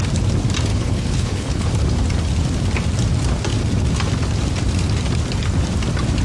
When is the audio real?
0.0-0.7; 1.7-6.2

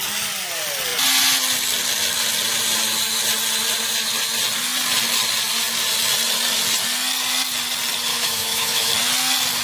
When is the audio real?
0.0-8.1; 8.9-9.6

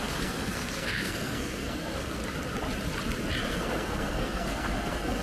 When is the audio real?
2.2-3.5

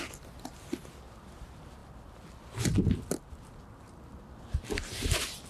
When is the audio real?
0.0-5.5

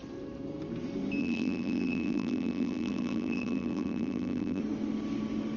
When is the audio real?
0.0-1.2; 4.6-5.6

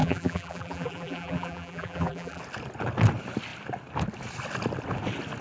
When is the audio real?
2.4-5.4

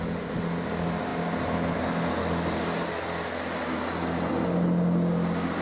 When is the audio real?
0.0-5.6

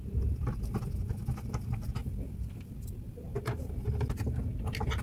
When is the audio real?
0.0-2.0; 3.9-5.0